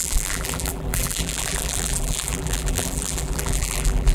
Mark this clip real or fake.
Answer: fake